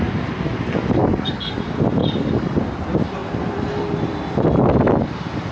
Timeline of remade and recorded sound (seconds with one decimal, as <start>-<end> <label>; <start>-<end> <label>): 0.0-1.0 recorded; 1.0-1.6 remade; 1.6-2.0 recorded; 2.0-2.6 remade; 2.6-5.5 recorded

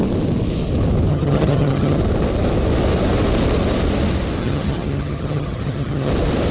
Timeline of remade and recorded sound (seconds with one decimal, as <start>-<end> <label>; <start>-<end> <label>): 0.0-1.1 recorded; 1.1-2.0 remade; 2.0-4.4 recorded; 4.4-6.1 remade; 6.1-6.5 recorded

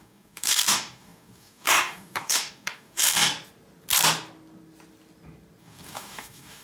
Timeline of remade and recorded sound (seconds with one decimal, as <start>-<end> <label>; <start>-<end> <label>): 0.0-3.3 remade; 3.3-5.6 recorded; 5.6-6.6 remade